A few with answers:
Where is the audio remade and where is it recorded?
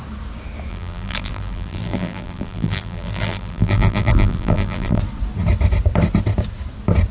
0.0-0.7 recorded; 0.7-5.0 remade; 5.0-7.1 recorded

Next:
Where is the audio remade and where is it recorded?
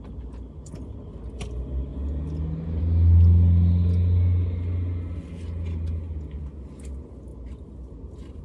0.0-8.4 recorded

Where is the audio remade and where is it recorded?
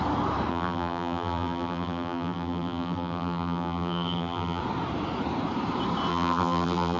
0.0-0.5 recorded; 0.5-4.6 remade; 4.6-6.1 recorded; 6.1-7.0 remade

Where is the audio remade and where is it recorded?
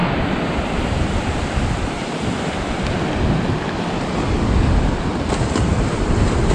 0.0-3.4 remade; 3.4-5.1 recorded; 5.1-5.7 remade; 5.7-6.5 recorded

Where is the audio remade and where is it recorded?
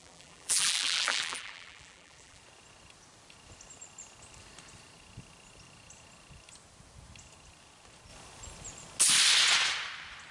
0.0-2.4 remade; 2.4-10.3 recorded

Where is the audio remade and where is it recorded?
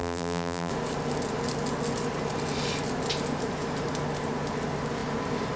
0.0-0.7 remade; 0.7-5.6 recorded